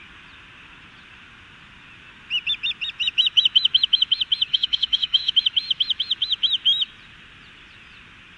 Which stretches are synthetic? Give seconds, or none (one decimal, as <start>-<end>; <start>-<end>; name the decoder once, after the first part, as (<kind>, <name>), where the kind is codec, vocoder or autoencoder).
4.5-5.3 (autoencoder, DAC-VAE)